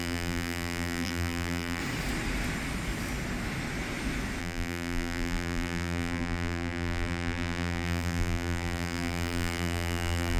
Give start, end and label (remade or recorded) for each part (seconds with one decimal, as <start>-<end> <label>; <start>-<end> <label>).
0.0-1.8 remade; 1.8-4.4 recorded; 4.4-10.4 remade